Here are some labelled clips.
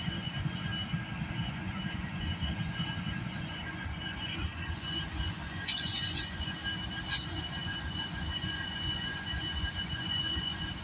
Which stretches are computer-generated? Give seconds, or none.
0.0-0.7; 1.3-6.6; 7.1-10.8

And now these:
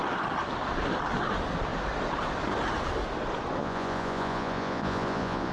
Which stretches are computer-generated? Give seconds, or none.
3.6-5.5

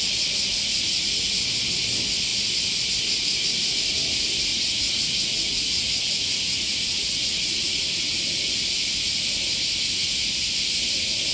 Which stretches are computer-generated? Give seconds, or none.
4.5-7.8

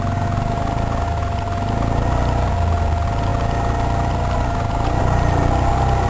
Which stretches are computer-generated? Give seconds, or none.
none